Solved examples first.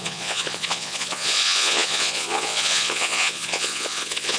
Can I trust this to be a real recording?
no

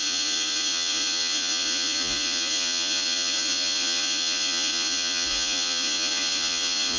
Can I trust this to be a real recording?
no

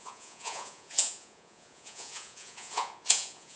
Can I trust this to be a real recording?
no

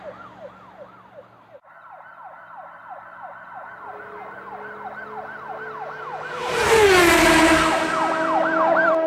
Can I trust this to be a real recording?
yes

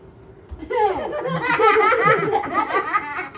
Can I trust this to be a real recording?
yes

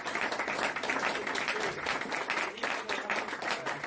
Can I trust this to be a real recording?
yes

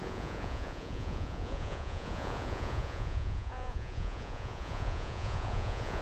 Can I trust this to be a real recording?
no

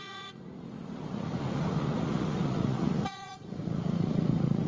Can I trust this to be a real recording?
no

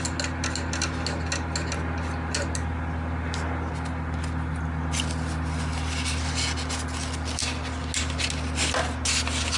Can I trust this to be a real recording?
yes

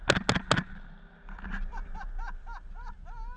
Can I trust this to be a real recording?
yes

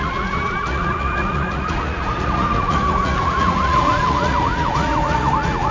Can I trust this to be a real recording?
no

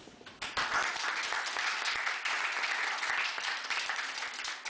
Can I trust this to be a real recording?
yes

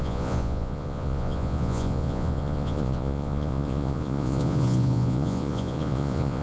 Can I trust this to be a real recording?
no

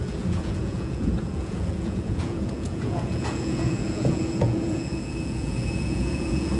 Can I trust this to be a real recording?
no